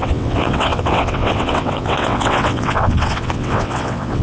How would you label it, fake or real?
fake